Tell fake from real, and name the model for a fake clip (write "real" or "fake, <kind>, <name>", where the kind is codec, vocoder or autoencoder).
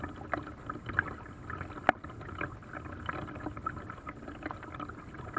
real